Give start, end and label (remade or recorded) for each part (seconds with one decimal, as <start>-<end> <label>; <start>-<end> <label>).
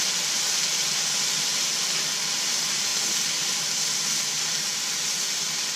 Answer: 0.0-5.8 recorded